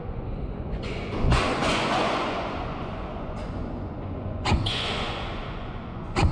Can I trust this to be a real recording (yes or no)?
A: no